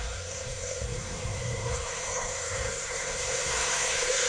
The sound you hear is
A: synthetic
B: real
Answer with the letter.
A